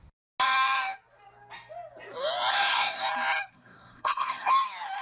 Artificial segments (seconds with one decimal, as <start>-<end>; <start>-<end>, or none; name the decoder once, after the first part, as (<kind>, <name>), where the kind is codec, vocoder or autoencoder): 2.5-3.0 (codec, SNAC); 3.5-4.5